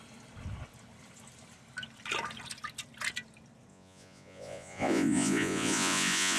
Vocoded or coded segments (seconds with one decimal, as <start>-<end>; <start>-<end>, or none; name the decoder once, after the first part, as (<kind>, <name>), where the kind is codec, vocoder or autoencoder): 3.7-6.4 (vocoder, Vocos)